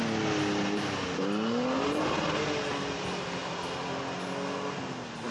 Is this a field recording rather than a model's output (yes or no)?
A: yes